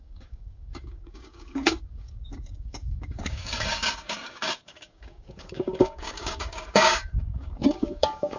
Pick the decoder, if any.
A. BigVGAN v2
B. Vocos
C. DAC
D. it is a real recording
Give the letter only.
C